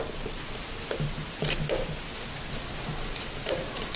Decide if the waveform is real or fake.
real